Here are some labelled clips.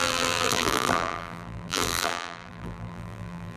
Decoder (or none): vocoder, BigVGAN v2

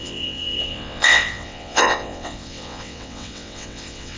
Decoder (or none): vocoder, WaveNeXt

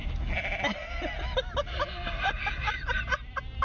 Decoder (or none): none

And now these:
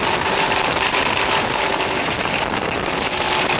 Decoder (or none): vocoder, BigVGAN v2